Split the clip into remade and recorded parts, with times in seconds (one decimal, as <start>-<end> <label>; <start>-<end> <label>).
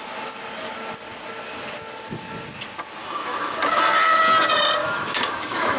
0.0-3.0 recorded; 3.0-3.8 remade; 3.8-4.8 recorded; 4.8-5.8 remade